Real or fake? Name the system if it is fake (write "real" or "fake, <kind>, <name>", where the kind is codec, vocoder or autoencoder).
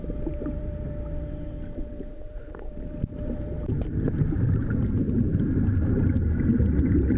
fake, vocoder, BigVGAN v2